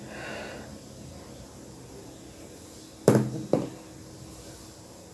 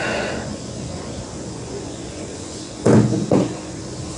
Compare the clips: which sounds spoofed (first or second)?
second